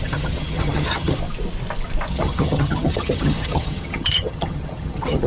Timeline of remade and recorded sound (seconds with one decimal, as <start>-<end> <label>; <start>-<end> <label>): 0.0-1.2 remade; 1.2-2.1 recorded; 2.1-5.3 remade